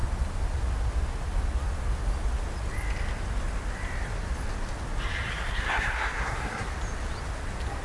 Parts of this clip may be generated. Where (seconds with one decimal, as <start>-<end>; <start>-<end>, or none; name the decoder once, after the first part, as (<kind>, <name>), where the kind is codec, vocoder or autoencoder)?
5.3-6.7 (codec, SNAC)